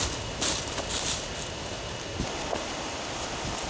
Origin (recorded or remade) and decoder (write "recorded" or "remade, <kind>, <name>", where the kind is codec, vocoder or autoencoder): recorded